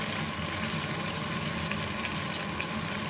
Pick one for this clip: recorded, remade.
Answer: recorded